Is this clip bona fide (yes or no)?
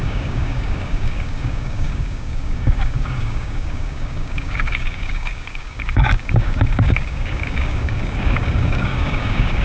no